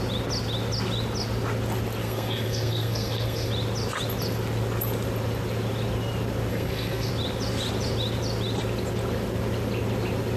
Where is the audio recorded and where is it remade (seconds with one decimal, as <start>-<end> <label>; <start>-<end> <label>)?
0.0-2.0 recorded; 2.0-3.5 remade; 3.5-6.5 recorded; 6.5-7.1 remade; 7.1-10.4 recorded